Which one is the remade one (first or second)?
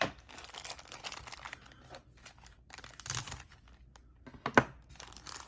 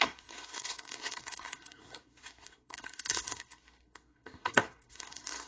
second